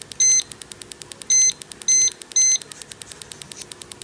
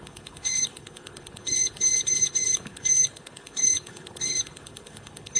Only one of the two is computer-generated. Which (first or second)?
second